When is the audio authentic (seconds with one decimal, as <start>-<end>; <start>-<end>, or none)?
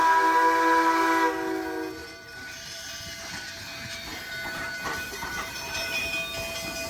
0.0-2.0; 2.9-4.1; 6.1-6.9